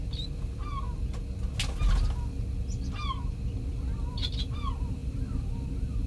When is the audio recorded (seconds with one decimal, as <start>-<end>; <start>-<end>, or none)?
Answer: 0.0-3.7